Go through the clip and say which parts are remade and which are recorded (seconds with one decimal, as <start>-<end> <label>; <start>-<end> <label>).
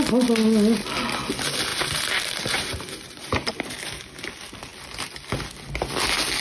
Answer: 0.0-1.7 recorded; 1.7-3.5 remade; 3.5-6.4 recorded